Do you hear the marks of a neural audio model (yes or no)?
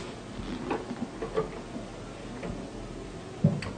no